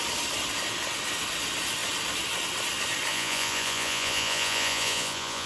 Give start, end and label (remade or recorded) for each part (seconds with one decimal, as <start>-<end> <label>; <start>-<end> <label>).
0.0-3.1 recorded; 3.1-5.5 remade

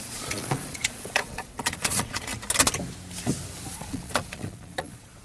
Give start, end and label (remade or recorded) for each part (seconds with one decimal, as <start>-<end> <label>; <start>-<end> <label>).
0.0-2.3 remade; 2.3-3.7 recorded; 3.7-5.2 remade